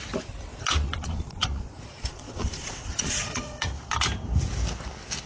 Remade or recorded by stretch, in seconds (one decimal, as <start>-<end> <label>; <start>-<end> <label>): 0.0-0.5 recorded; 0.5-3.7 remade; 3.7-5.3 recorded